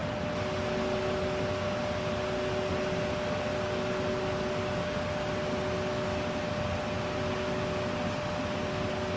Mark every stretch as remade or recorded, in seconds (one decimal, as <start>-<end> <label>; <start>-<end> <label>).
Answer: 0.0-9.2 recorded